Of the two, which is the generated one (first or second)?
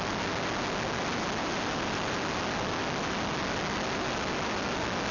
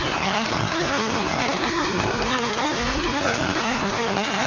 second